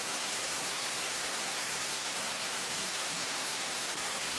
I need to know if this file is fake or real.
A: fake